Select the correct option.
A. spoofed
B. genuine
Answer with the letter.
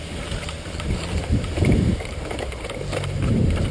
A